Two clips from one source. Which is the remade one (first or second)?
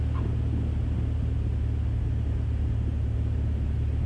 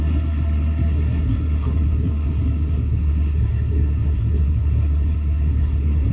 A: second